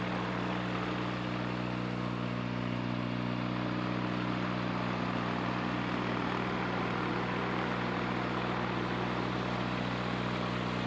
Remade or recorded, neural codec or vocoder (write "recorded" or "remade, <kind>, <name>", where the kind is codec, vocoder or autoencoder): recorded